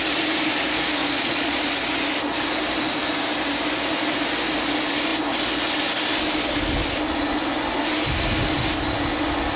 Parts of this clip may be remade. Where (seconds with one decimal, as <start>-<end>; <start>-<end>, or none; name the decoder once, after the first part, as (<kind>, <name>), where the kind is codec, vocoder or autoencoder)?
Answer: 1.0-1.6 (vocoder, Vocos)